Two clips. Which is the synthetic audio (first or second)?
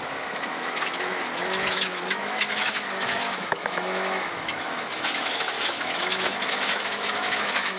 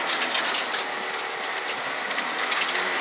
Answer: first